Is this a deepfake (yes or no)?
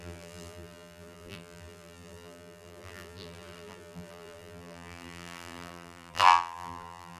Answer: yes